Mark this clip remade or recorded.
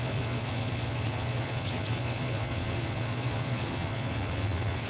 remade